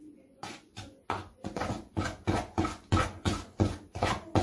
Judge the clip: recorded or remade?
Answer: remade